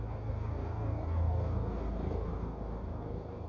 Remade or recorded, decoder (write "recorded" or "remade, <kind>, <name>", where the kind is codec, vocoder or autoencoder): remade, codec, DAC